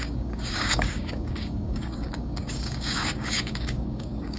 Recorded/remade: remade